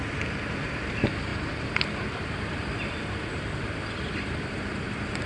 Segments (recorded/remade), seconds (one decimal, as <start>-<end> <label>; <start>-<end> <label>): 0.0-5.3 recorded